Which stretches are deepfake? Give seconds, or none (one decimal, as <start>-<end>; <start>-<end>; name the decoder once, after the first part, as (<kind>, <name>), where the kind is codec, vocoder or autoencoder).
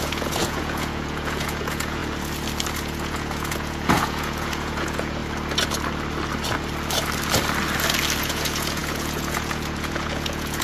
0.0-2.0 (vocoder, Vocos); 2.8-5.2; 8.2-10.6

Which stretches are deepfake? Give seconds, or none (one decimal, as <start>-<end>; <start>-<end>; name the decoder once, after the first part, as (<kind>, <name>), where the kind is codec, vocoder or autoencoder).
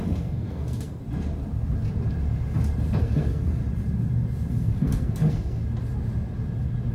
0.0-1.0 (codec, SNAC); 3.0-3.6; 4.5-5.6